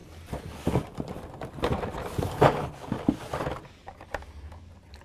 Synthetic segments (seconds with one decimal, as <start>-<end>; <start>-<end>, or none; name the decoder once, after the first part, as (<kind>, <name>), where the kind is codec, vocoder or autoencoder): 0.0-2.7 (vocoder, BigVGAN v2); 3.8-4.5